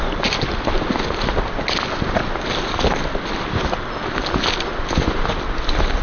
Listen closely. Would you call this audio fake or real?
real